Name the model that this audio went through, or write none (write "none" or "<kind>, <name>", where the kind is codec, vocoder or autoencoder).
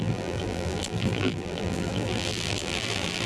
vocoder, BigVGAN v2